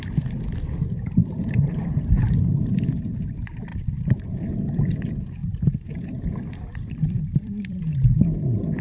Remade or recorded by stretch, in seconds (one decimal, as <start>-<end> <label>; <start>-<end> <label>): 0.0-1.2 recorded; 1.2-2.3 remade; 2.3-3.7 recorded; 3.7-4.6 remade; 4.6-5.4 recorded; 5.4-6.4 remade; 6.4-7.3 recorded; 7.3-7.9 remade; 7.9-8.8 recorded